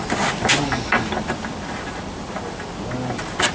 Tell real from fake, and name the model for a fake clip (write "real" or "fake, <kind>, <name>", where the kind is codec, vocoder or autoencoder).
real